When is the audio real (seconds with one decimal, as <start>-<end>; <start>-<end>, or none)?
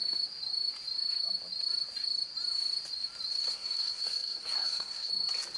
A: 0.0-3.4; 5.1-5.6